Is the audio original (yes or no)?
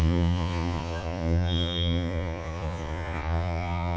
no